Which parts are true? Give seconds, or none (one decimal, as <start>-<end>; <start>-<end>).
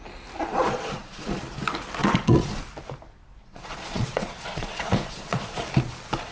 0.0-0.5; 1.4-2.0; 2.6-3.4; 5.6-6.3